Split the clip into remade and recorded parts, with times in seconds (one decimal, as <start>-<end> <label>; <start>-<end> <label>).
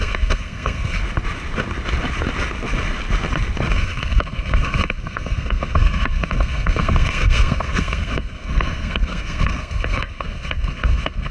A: 0.0-1.0 remade; 1.0-3.7 recorded; 3.7-11.3 remade